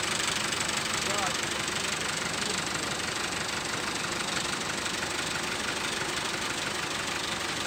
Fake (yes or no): yes